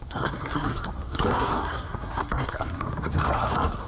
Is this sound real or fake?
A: fake